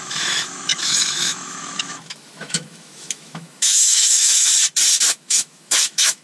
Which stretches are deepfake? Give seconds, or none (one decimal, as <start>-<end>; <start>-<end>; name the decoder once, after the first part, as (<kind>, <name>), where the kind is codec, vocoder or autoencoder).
0.0-4.5 (autoencoder, DAC-VAE); 5.1-6.2